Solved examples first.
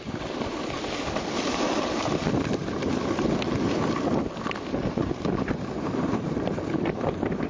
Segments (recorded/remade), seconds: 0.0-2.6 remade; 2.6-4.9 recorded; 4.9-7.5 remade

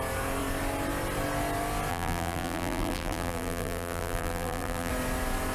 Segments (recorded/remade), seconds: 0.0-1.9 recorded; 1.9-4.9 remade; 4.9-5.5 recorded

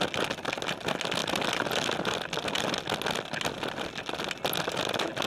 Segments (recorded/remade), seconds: 0.0-5.3 recorded

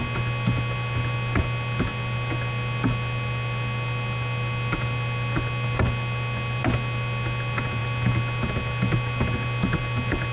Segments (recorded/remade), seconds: 0.0-10.3 recorded

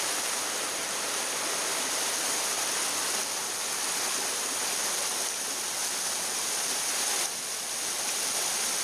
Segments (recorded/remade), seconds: 0.0-1.6 recorded; 1.6-3.0 remade; 3.0-5.8 recorded; 5.8-8.8 remade

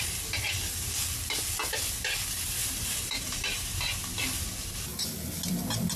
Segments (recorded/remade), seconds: 0.0-2.6 recorded; 2.6-3.7 remade; 3.7-6.0 recorded